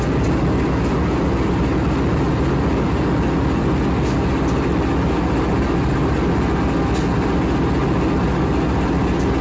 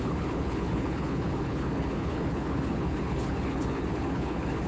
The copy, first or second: second